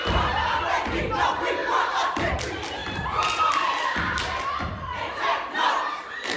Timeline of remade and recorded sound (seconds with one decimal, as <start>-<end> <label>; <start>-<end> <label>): 0.0-1.6 recorded; 1.6-2.4 remade; 2.4-6.4 recorded